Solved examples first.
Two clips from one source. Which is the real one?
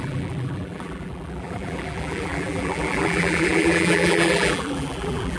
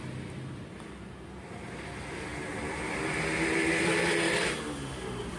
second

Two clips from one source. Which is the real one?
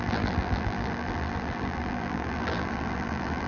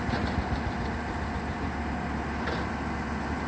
second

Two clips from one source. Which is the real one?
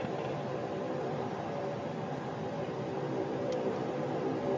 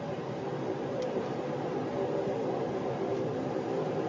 first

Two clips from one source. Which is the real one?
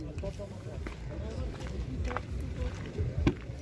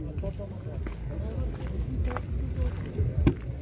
second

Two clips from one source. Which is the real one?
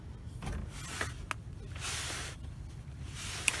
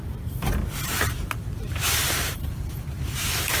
first